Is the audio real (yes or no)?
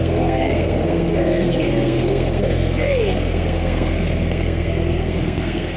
no